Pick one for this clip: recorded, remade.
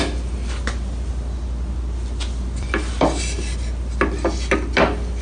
recorded